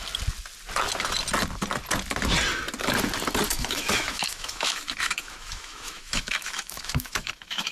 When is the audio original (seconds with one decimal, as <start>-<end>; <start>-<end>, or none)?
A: 0.0-3.5